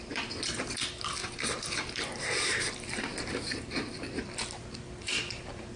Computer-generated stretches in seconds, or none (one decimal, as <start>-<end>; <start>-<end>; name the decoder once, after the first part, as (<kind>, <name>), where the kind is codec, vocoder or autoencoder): 0.0-4.2 (vocoder, BigVGAN v2); 5.0-5.8